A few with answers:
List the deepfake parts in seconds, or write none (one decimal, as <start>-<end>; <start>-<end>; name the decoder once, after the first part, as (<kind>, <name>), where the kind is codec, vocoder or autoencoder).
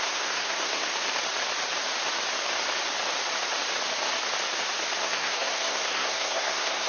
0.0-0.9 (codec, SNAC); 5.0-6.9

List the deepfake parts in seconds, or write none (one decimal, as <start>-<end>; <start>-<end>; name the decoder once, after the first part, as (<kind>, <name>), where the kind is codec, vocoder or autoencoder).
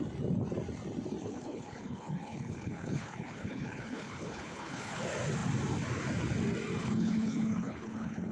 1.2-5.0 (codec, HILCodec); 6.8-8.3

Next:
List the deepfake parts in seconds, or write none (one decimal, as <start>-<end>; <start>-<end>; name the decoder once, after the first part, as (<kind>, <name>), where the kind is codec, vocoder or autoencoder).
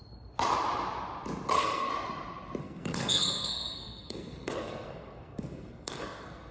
1.5-1.9 (codec, SNAC); 2.6-6.5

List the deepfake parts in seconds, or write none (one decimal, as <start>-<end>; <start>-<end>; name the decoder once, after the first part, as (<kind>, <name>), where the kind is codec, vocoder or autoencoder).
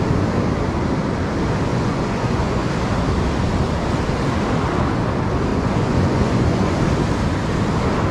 1.7-2.7 (vocoder, Vocos); 5.5-6.8